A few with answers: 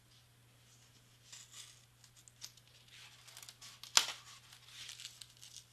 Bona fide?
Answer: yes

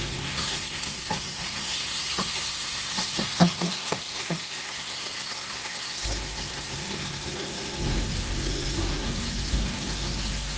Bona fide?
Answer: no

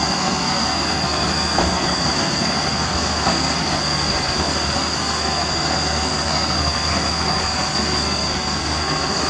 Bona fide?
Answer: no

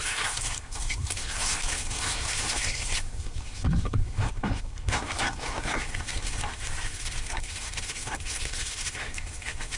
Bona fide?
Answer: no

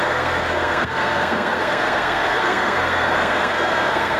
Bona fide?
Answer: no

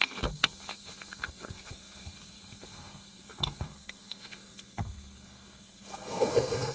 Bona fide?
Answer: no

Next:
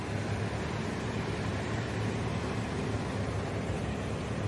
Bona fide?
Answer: yes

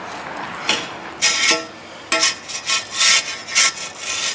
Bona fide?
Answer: yes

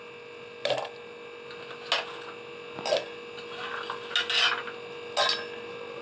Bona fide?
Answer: yes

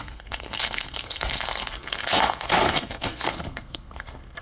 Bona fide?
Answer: no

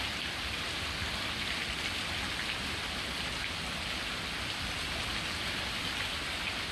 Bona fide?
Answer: yes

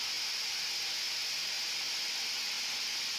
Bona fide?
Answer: yes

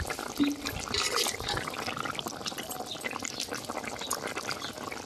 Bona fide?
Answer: yes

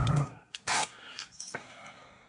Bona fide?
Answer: no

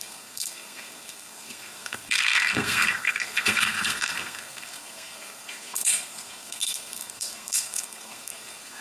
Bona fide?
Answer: no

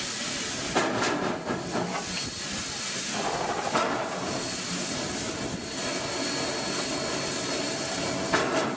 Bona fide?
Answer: yes